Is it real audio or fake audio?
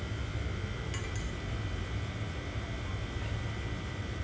real